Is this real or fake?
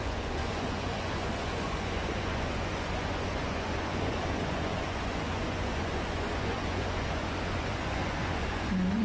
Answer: fake